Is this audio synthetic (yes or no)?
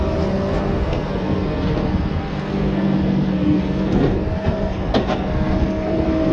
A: yes